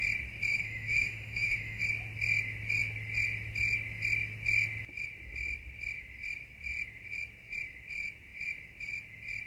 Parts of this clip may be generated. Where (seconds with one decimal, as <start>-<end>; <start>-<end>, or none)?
0.5-1.8